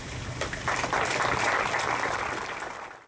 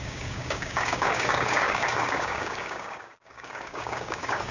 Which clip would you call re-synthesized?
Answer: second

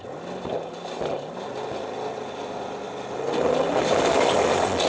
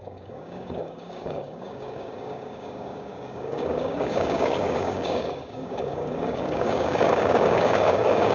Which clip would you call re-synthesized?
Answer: second